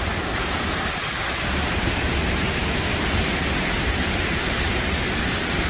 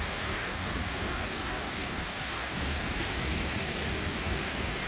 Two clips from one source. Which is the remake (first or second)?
second